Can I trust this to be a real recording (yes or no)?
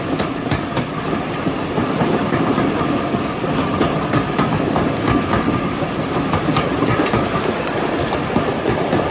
yes